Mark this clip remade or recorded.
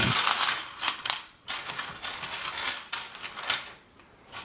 recorded